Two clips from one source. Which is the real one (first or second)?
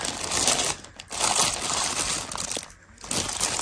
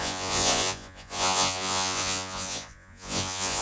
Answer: first